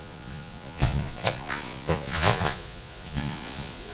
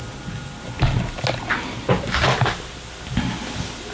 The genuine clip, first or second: second